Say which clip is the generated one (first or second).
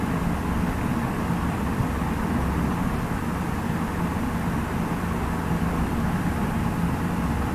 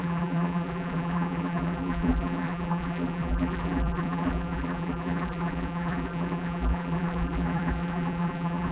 second